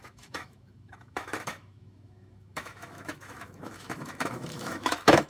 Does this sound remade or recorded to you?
remade